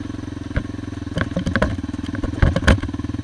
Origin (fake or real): real